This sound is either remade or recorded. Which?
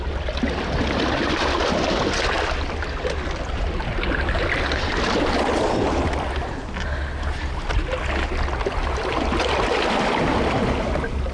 recorded